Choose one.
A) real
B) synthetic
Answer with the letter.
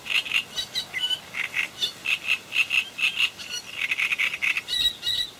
A